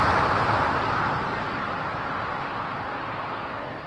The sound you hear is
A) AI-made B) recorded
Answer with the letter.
B